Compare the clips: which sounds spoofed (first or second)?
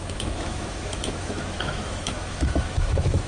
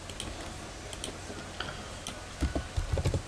first